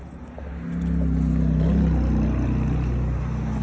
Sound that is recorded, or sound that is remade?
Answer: recorded